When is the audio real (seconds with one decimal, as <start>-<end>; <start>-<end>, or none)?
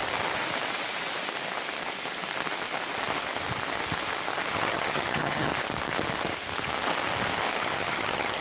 0.0-4.5; 5.5-7.6